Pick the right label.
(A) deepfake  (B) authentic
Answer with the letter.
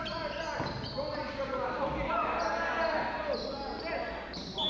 B